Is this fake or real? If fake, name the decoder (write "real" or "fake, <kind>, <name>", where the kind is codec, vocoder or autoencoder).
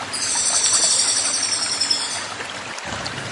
real